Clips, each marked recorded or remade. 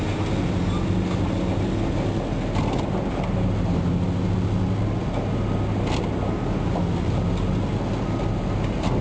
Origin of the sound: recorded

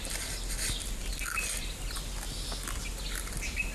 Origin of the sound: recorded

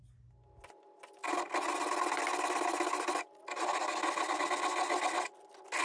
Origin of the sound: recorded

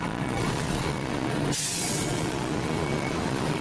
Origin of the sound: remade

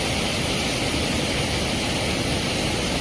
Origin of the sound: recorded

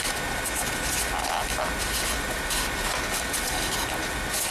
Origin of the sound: recorded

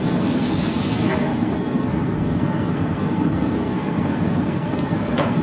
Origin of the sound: remade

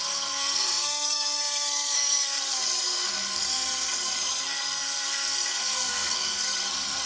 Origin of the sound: remade